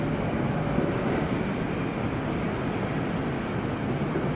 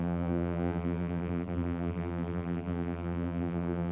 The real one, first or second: first